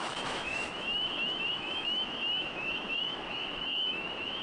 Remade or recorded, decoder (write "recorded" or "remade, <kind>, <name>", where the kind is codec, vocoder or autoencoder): remade, autoencoder, DAC-VAE